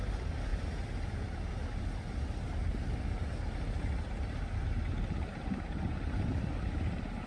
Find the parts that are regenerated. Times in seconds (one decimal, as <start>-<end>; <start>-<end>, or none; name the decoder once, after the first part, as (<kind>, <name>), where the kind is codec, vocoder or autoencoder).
none